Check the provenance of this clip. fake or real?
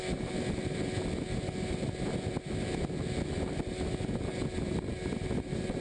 real